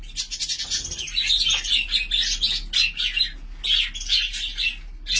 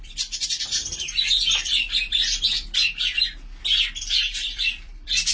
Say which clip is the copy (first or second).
second